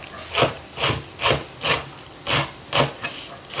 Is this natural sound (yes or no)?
yes